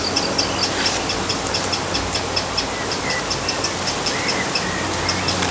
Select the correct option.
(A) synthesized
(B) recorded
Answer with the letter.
A